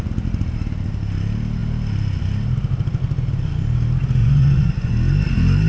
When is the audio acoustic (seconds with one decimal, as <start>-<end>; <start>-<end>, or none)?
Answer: 0.0-4.2; 4.9-5.7